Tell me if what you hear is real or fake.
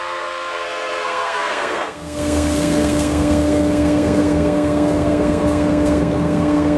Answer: fake